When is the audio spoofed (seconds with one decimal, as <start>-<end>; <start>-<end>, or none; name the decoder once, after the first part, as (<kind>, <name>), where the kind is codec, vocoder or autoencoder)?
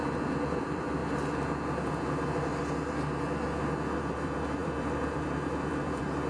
0.5-1.0 (vocoder, BigVGAN v2); 4.0-6.3